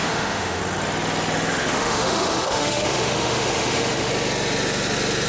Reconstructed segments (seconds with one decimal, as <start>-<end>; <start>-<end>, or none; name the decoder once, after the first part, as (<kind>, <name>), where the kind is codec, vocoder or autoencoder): 0.0-0.6 (autoencoder, DAC-VAE); 1.7-4.1